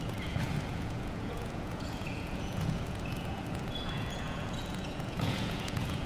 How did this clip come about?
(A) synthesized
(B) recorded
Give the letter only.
A